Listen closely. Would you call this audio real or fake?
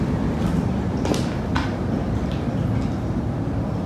real